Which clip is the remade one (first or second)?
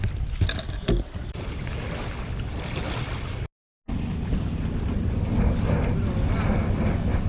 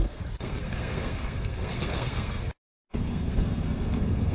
second